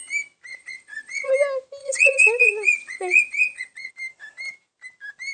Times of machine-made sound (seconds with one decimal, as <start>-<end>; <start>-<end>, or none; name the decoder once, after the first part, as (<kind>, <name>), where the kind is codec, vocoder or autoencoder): 0.5-1.3 (vocoder, Vocos); 1.8-3.9